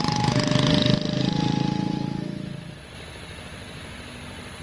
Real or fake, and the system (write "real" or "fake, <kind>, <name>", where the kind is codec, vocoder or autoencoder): real